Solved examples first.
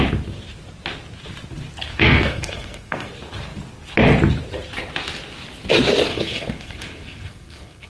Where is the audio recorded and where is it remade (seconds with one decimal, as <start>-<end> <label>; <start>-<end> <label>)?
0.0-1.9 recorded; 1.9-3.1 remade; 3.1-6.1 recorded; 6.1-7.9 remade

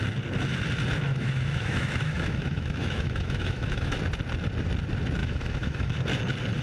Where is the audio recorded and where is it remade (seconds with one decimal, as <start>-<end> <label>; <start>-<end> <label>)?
0.0-1.1 recorded; 1.1-4.0 remade; 4.0-5.2 recorded; 5.2-6.0 remade; 6.0-6.6 recorded

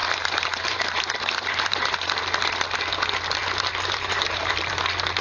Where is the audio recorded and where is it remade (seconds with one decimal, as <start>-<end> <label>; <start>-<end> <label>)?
0.0-2.2 remade; 2.2-3.4 recorded; 3.4-4.7 remade; 4.7-5.2 recorded

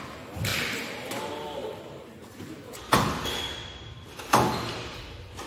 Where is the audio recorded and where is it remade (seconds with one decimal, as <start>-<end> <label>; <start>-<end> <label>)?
0.0-5.5 recorded

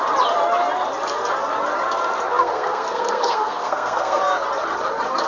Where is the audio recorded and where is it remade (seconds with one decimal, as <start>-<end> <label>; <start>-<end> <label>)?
0.0-2.3 recorded; 2.3-4.2 remade; 4.2-5.3 recorded

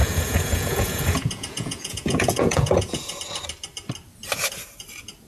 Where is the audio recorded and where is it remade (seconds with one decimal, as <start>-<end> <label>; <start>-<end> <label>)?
0.0-3.2 remade; 3.2-5.3 recorded